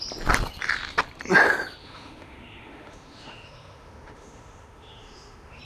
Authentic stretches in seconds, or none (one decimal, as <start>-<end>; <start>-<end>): 0.0-1.8